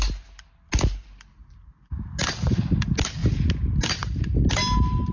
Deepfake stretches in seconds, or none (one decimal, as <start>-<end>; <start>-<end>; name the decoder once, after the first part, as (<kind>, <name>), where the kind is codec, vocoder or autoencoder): none